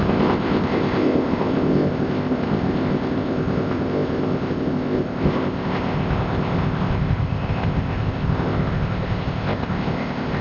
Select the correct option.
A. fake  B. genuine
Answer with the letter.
A